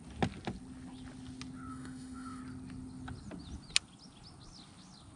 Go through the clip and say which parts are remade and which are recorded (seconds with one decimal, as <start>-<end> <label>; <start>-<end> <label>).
0.0-1.7 recorded; 1.7-2.4 remade; 2.4-5.2 recorded